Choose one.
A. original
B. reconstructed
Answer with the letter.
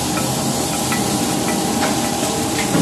A